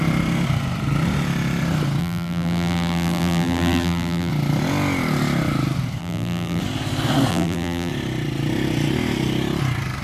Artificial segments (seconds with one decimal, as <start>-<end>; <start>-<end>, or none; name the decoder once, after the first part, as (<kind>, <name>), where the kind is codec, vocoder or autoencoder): 2.0-4.3 (vocoder, BigVGAN v2); 6.0-6.6; 7.3-7.9